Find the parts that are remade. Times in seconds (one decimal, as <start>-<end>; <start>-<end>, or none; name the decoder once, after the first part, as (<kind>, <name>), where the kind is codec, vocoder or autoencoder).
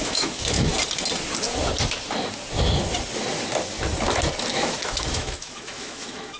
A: 0.0-0.7 (autoencoder, DAC-VAE); 4.5-6.4